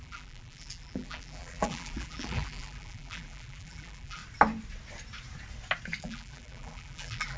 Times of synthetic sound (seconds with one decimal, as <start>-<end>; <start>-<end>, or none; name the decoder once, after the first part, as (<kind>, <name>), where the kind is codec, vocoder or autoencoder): 0.0-4.2 (vocoder, BigVGAN v2); 6.0-7.4